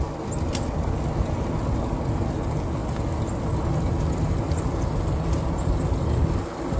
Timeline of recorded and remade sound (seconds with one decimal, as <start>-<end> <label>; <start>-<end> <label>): 0.0-6.8 recorded